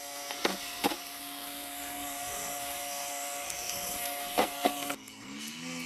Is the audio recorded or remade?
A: remade